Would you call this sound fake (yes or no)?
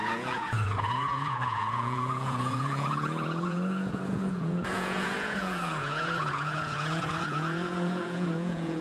yes